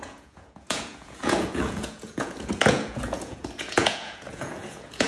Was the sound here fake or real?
fake